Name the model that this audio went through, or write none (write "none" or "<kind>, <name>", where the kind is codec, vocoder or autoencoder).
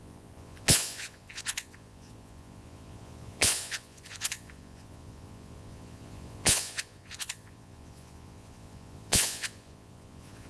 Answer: vocoder, Vocos